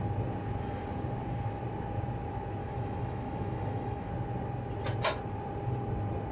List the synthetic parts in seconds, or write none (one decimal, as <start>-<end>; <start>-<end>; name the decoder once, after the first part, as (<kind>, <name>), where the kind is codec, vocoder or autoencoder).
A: 2.6-4.1 (autoencoder, DAC-VAE)